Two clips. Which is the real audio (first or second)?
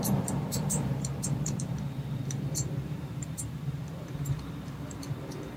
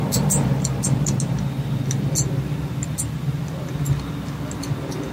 second